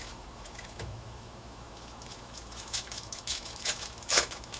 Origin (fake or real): fake